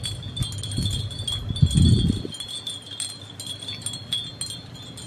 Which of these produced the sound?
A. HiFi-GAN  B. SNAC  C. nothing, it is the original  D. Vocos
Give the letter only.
C